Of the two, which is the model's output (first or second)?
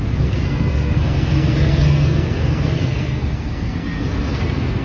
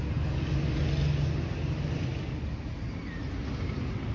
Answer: first